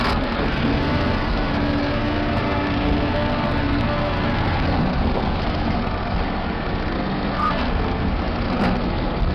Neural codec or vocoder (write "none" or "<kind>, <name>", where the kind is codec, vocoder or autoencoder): codec, SNAC